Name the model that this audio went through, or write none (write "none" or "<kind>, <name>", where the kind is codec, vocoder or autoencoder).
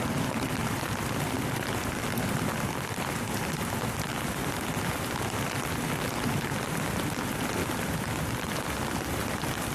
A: none